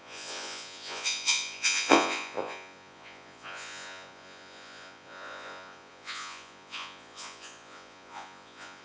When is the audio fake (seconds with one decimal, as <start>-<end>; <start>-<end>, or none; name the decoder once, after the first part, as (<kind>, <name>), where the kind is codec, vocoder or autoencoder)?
0.0-8.8 (vocoder, Vocos)